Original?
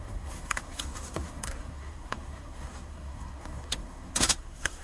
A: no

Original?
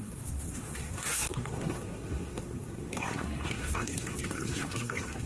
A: no